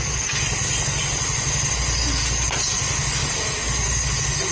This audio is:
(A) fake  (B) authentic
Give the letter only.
B